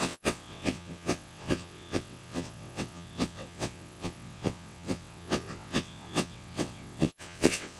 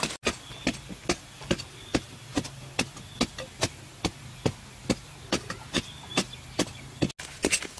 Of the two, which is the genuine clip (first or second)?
second